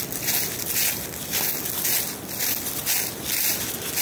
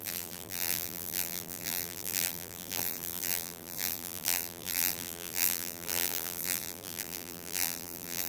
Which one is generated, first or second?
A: second